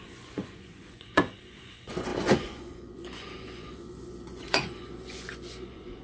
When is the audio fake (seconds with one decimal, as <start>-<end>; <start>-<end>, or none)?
0.0-6.0